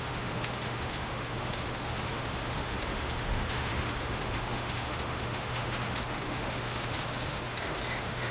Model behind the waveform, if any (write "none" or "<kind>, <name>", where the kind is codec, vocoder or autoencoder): autoencoder, DAC-VAE